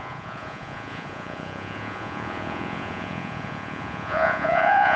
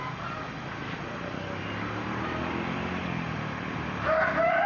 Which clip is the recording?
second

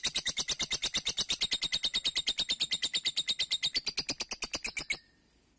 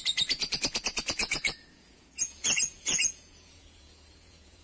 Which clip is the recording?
first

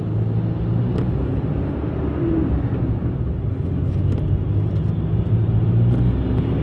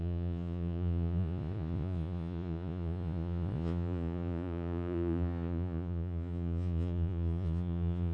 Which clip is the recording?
first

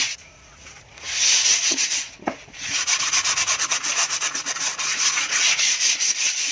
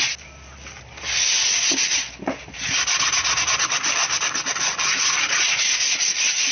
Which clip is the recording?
second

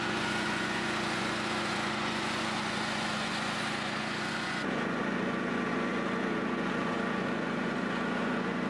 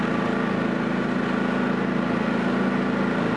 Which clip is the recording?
second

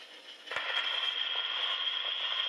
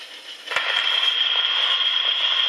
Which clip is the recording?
second